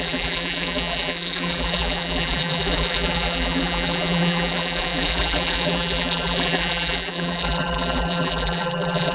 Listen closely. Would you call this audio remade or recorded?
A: remade